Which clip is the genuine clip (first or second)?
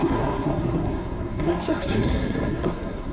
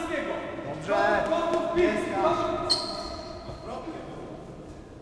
second